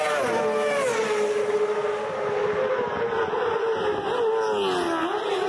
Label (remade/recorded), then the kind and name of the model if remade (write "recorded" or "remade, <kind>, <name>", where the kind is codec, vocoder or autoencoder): recorded